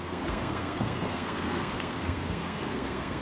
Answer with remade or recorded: remade